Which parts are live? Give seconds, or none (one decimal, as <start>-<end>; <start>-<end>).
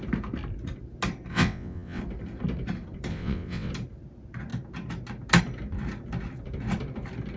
0.0-1.3; 2.0-3.1; 3.7-7.4